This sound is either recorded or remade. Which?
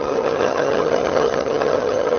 remade